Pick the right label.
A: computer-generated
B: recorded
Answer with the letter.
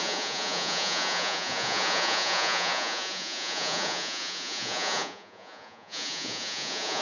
A